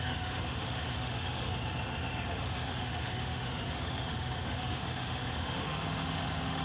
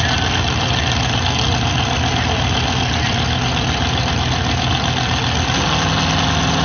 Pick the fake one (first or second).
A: first